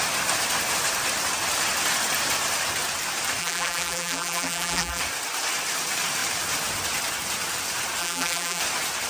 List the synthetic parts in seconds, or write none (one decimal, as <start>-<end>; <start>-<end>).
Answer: 3.4-5.0; 8.0-8.6